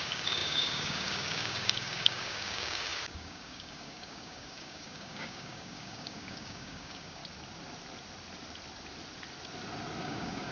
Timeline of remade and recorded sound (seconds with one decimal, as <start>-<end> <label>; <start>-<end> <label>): 0.0-7.2 remade; 7.2-10.0 recorded; 10.0-10.5 remade